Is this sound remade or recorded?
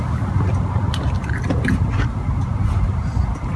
recorded